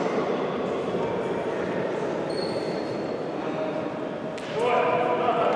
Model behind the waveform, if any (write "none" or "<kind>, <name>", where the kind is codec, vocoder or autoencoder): none